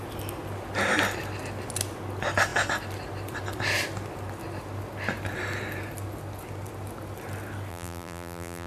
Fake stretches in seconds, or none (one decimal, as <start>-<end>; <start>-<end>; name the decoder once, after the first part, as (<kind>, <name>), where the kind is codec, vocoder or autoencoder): 7.7-8.7 (vocoder, BigVGAN v2)